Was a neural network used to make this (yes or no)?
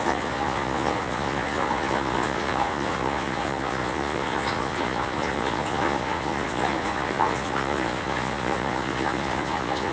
yes